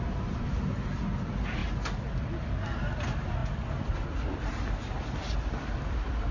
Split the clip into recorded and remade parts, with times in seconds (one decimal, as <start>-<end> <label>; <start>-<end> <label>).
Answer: 0.0-6.3 recorded